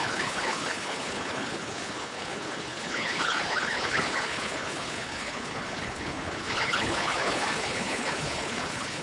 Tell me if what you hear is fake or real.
fake